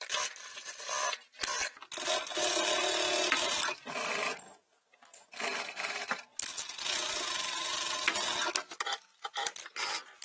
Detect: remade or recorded recorded